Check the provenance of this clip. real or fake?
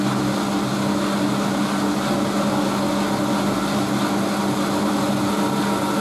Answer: real